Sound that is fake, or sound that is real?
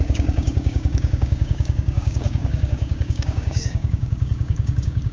fake